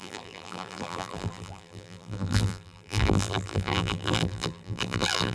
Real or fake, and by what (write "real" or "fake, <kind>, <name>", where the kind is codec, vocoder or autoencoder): fake, vocoder, BigVGAN v2